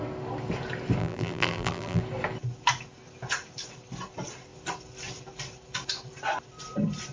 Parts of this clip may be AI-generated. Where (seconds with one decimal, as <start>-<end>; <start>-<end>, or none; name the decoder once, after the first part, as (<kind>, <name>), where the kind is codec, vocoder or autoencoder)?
1.0-2.0 (vocoder, BigVGAN v2)